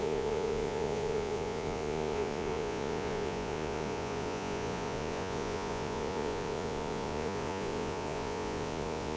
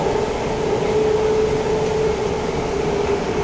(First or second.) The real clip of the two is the second